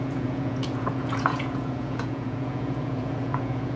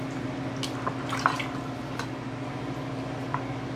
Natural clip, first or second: second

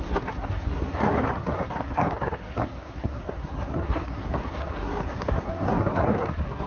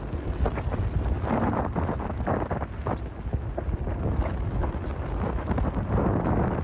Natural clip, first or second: second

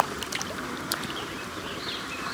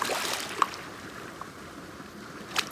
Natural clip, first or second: second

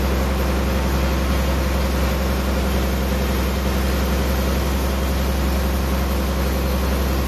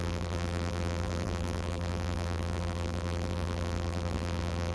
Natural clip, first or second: first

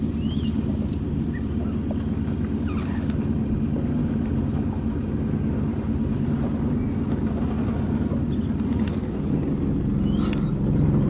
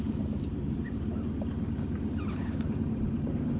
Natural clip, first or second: first